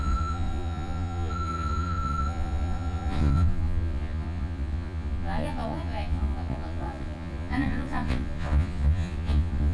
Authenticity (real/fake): fake